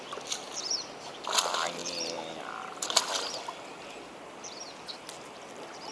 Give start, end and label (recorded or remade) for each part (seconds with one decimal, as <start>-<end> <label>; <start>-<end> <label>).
0.0-5.9 recorded